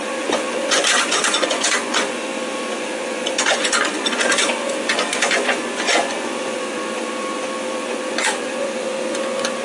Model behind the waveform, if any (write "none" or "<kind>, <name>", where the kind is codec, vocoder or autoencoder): vocoder, Vocos